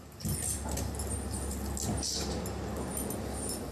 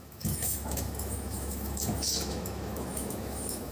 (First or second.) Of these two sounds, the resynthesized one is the second